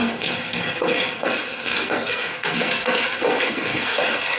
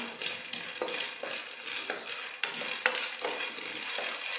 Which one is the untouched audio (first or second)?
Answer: second